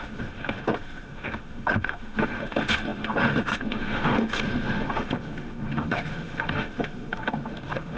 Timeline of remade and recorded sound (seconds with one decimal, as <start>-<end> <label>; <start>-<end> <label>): 0.0-8.0 remade